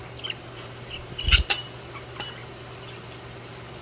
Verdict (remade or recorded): recorded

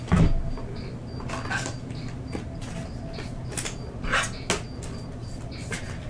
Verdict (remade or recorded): recorded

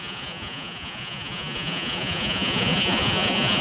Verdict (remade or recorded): remade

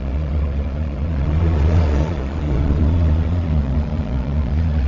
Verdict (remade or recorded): remade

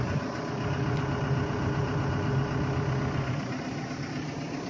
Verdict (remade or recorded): recorded